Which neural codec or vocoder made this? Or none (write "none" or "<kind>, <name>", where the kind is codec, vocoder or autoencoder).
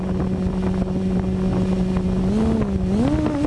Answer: none